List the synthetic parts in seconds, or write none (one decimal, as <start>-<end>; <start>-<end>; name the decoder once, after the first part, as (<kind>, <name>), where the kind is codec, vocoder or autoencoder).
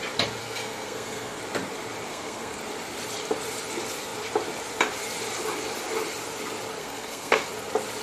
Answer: 0.4-1.4 (codec, SNAC); 2.1-2.6; 6.8-7.5